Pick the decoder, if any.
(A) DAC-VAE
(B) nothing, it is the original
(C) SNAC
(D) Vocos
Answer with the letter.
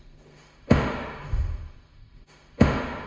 A